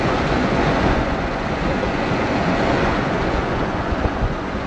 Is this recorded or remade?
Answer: remade